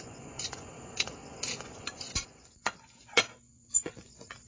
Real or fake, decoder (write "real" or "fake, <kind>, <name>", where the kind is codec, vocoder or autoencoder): fake, vocoder, Vocos